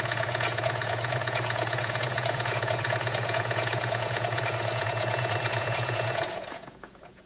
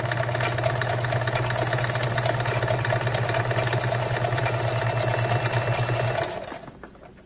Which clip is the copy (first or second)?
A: first